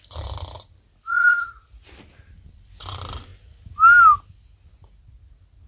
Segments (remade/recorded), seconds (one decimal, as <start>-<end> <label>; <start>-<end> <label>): 0.0-1.1 recorded; 1.1-1.9 remade; 1.9-5.7 recorded

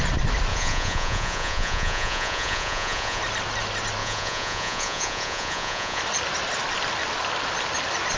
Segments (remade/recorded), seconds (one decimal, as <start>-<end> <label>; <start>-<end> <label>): 0.0-0.5 recorded; 0.5-3.2 remade; 3.2-4.0 recorded; 4.0-6.0 remade; 6.0-8.2 recorded

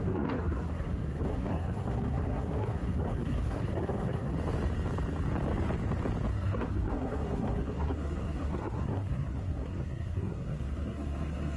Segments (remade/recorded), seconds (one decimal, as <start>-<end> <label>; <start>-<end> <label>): 0.0-4.3 remade; 4.3-6.3 recorded; 6.3-11.6 remade

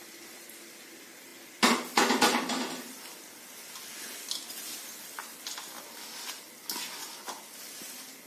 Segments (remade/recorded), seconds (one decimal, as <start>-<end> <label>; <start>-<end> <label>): 0.0-8.3 recorded

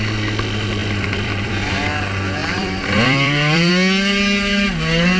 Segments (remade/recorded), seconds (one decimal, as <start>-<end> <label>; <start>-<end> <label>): 0.0-0.8 recorded; 0.8-1.8 remade; 1.8-2.4 recorded; 2.4-3.7 remade; 3.7-5.2 recorded